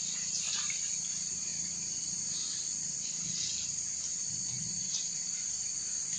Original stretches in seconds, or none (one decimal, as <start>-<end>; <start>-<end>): 0.0-6.2